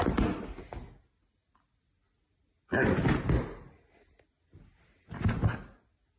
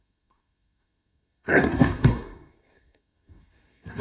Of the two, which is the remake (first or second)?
second